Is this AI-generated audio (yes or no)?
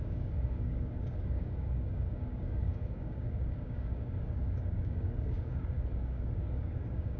yes